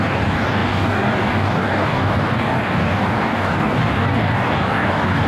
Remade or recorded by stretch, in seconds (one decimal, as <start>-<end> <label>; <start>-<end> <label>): 0.0-5.3 remade